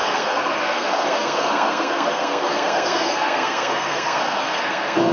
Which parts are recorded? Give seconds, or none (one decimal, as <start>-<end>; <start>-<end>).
none